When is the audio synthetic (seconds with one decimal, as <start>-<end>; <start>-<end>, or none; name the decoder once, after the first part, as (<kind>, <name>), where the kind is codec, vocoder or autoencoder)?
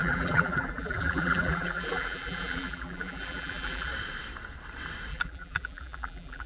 0.0-3.9 (vocoder, BigVGAN v2); 5.1-6.5